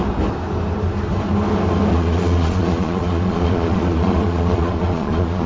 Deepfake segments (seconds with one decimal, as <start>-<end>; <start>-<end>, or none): 1.9-5.5

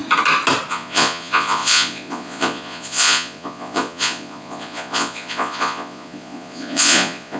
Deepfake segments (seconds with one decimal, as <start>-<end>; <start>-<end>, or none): 0.7-7.4

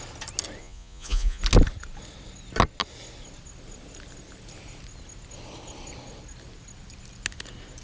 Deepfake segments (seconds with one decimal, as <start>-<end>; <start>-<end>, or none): 0.6-1.4

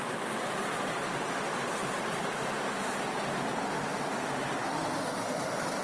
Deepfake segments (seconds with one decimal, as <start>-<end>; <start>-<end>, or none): none

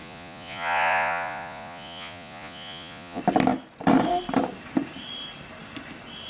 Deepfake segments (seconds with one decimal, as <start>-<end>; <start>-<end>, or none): 0.0-3.2